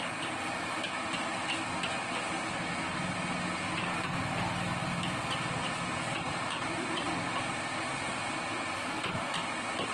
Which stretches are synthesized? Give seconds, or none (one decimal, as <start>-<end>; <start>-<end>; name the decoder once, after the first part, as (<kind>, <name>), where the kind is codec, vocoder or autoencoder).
4.8-6.3 (vocoder, BigVGAN v2)